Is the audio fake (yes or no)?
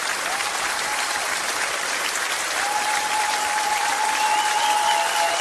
no